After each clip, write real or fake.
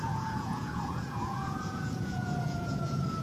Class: fake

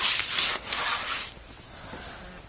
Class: real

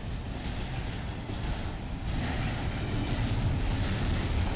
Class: real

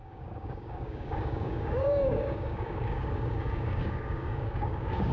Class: fake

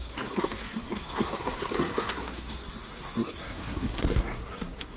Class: fake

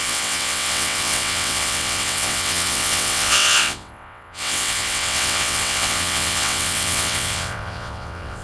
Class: fake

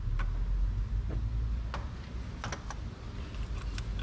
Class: real